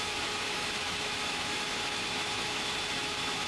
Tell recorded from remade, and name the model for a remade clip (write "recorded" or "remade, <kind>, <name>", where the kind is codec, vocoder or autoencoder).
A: remade, autoencoder, DAC-VAE